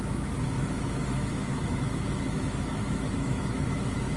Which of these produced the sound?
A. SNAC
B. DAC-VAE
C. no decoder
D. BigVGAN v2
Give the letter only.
B